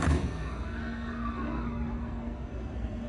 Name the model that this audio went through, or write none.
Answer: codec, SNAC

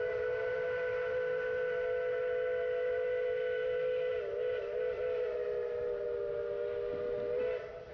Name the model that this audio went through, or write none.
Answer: none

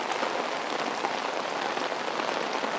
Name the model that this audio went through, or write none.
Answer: none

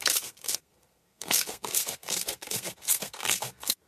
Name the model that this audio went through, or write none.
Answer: codec, SNAC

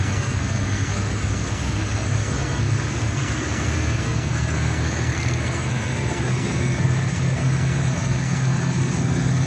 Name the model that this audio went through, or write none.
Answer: codec, SNAC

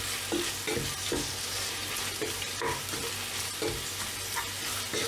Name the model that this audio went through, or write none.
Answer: none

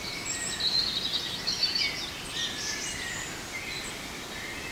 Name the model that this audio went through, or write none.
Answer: none